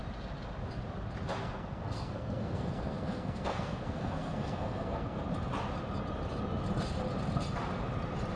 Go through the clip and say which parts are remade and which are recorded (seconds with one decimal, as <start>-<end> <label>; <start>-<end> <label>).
0.0-1.4 recorded; 1.4-5.2 remade; 5.2-8.4 recorded